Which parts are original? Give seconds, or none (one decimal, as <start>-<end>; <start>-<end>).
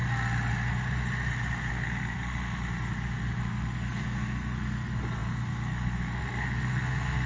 0.0-1.7; 2.6-3.4